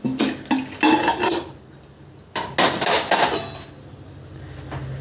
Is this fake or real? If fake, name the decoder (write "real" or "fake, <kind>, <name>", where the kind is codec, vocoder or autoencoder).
real